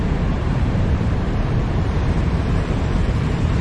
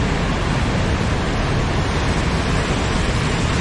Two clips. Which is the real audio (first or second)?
second